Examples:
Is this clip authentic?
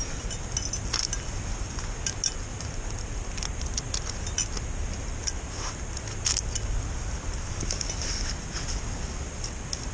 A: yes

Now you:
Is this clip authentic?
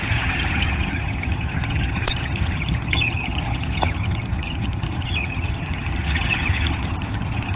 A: no